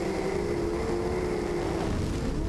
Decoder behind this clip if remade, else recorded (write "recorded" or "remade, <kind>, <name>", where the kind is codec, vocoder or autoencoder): recorded